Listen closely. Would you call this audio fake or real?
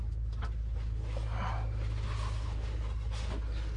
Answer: real